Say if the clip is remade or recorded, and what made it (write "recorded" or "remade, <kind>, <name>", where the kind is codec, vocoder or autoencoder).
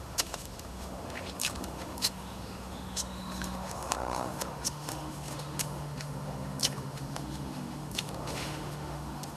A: remade, autoencoder, DAC-VAE